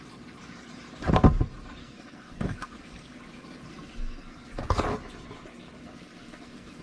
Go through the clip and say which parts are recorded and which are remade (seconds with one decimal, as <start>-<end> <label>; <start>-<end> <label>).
0.0-1.8 recorded; 1.8-3.2 remade; 3.2-3.7 recorded; 3.7-4.6 remade; 4.6-5.8 recorded; 5.8-6.8 remade